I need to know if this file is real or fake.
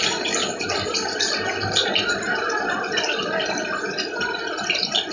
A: real